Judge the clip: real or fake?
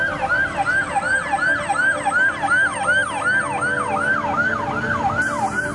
real